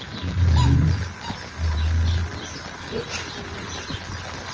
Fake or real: real